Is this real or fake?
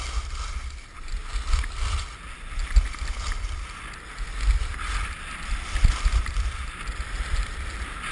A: real